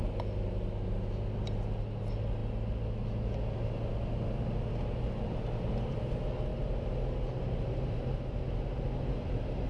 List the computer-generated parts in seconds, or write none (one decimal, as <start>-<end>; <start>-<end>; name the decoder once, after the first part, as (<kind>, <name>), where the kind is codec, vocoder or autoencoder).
none